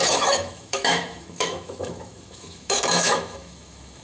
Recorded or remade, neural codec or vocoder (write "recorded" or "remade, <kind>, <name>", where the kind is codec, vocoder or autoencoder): remade, autoencoder, DAC-VAE